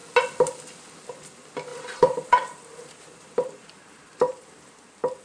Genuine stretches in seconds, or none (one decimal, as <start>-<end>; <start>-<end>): 0.0-1.7; 4.7-5.2

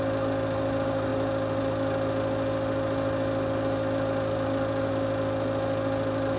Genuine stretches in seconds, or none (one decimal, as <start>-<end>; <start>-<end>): 0.0-6.4

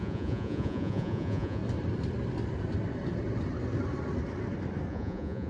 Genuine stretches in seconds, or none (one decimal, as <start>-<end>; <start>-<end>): 1.6-4.9

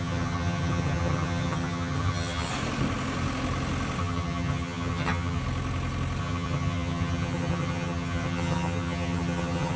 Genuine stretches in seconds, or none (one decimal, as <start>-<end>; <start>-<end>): 2.5-4.0; 5.4-6.2

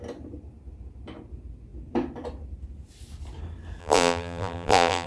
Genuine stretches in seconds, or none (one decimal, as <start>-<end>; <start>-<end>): 0.0-3.8

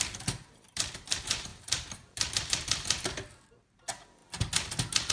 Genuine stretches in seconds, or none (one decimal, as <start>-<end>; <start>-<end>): 4.2-5.1

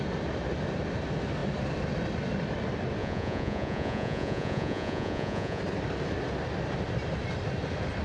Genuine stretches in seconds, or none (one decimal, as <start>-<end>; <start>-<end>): 0.0-3.0; 5.6-8.0

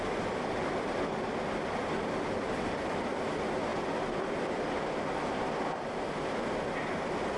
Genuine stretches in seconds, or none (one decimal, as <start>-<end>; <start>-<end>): 0.0-7.4